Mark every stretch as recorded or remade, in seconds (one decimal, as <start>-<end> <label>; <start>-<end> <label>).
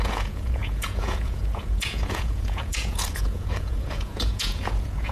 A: 0.0-5.1 remade